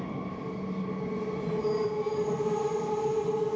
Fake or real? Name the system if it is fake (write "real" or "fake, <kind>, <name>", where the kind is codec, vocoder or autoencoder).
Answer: real